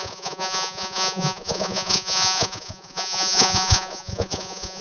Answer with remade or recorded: remade